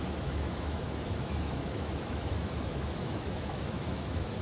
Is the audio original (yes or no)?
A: no